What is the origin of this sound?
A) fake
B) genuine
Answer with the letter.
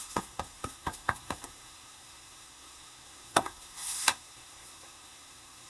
A